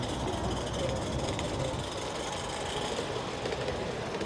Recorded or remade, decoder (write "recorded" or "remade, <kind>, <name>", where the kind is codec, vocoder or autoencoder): recorded